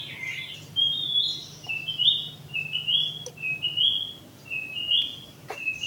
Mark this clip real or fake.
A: real